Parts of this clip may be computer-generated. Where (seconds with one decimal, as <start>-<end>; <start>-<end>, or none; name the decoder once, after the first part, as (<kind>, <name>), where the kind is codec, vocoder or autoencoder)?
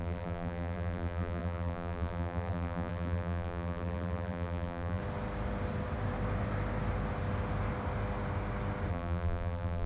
0.0-5.0 (vocoder, BigVGAN v2); 8.9-9.9